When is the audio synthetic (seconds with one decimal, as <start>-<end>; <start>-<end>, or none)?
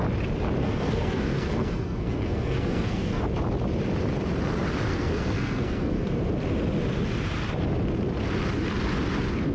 0.6-3.2; 4.9-6.2